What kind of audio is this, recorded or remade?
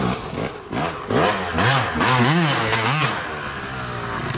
recorded